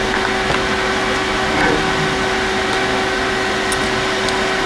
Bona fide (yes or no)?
yes